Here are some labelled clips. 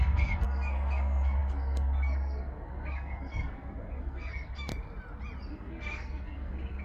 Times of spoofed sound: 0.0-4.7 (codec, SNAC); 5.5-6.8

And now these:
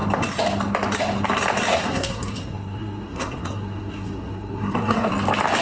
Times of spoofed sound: 1.7-5.1 (codec, SNAC)

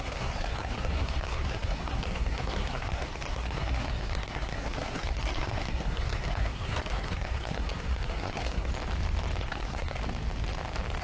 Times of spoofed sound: 0.0-8.7 (codec, SNAC); 9.4-10.0

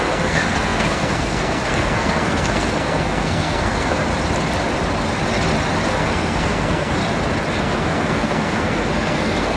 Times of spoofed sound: 0.0-4.0 (codec, SNAC); 5.9-7.0; 7.6-9.6

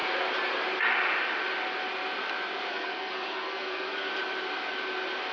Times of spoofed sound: 2.7-4.1 (codec, SNAC)

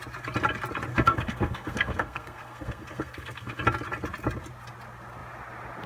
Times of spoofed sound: 0.9-3.6 (codec, SNAC)

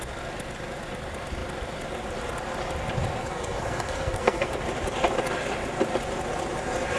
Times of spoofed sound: 3.2-4.6 (codec, SNAC)